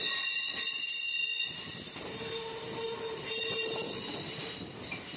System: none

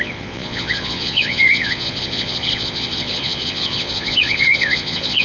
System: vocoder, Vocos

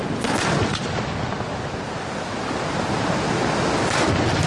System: none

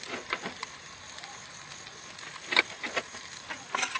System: none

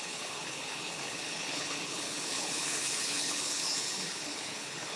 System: codec, HILCodec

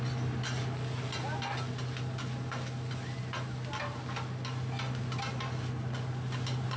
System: none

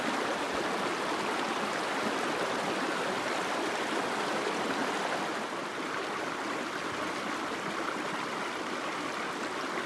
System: none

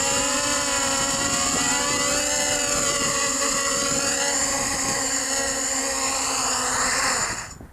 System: none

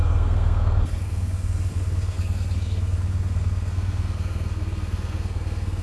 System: codec, SNAC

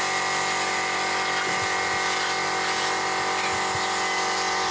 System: none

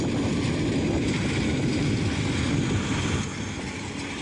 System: none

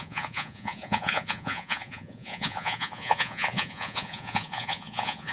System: vocoder, Vocos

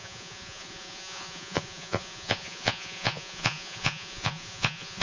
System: vocoder, Vocos